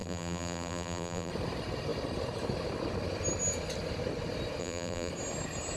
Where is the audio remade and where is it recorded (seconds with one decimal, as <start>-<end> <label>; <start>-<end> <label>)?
0.0-1.3 remade; 1.3-4.6 recorded; 4.6-5.1 remade; 5.1-5.8 recorded